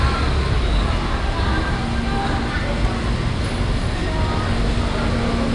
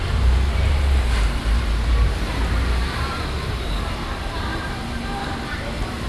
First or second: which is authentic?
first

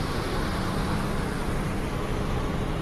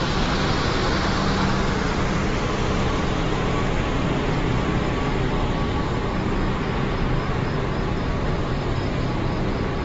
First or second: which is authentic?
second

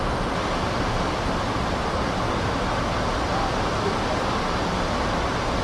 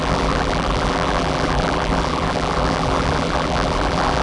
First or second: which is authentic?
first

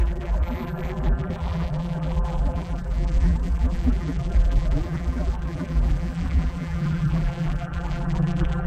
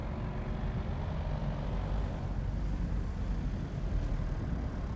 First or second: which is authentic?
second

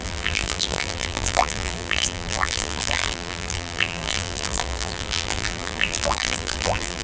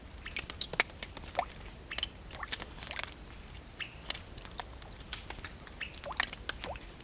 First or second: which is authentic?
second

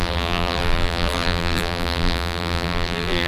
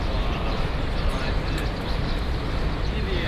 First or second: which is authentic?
second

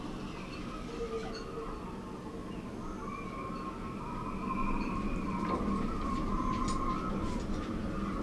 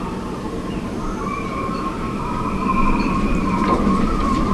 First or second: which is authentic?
first